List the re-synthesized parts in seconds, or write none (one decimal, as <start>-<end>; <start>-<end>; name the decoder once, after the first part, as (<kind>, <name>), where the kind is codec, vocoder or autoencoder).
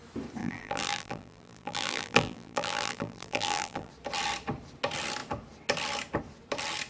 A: 0.4-3.9 (vocoder, BigVGAN v2)